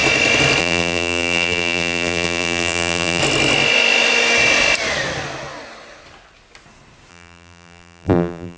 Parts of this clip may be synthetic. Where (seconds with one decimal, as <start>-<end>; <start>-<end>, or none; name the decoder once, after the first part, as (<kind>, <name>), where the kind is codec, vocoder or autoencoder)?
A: 0.6-3.2 (vocoder, BigVGAN v2); 7.1-8.6